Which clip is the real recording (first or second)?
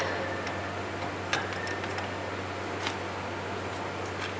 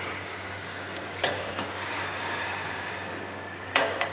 first